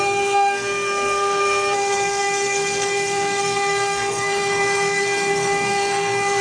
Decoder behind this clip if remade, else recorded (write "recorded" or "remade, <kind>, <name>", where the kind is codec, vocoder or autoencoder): remade, codec, SNAC